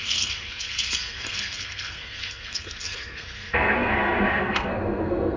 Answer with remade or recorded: remade